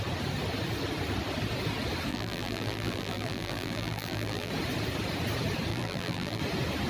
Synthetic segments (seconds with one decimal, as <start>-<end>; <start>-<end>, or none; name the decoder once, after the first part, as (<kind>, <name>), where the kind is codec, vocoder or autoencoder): 2.1-4.5 (vocoder, BigVGAN v2); 5.7-6.4